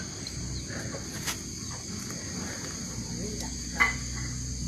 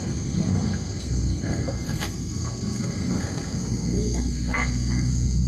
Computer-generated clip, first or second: second